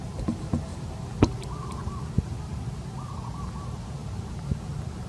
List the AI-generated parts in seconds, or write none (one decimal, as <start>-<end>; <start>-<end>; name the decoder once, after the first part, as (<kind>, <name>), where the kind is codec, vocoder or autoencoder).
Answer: 0.7-1.2 (vocoder, BigVGAN v2); 1.8-3.2; 4.0-5.1